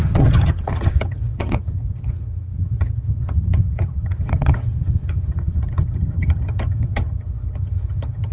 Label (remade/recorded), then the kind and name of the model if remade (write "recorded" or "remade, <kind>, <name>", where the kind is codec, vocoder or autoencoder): remade, vocoder, HiFi-GAN